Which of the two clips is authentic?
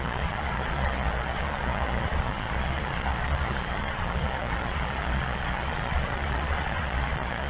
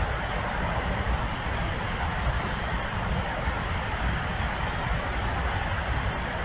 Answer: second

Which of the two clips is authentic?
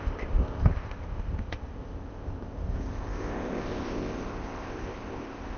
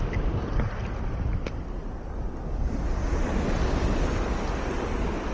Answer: second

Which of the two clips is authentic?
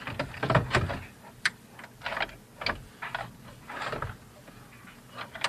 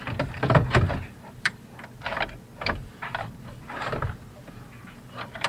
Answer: first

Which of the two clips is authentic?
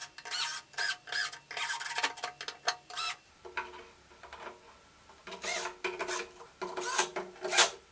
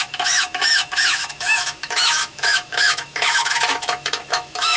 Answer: first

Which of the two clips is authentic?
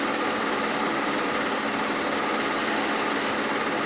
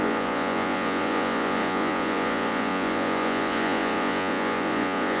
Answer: first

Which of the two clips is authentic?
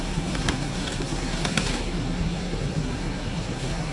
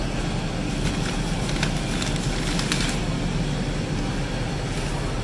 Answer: second